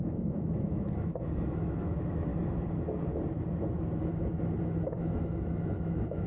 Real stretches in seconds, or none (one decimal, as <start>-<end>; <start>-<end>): 2.3-4.6